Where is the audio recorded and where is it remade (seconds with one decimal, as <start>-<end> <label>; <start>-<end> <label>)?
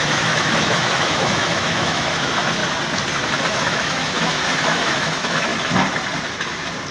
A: 0.0-2.6 remade; 2.6-3.5 recorded; 3.5-5.5 remade; 5.5-6.9 recorded